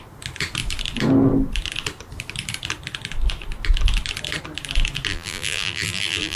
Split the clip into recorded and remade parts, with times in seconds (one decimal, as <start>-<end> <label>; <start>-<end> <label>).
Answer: 0.0-5.1 recorded; 5.1-6.4 remade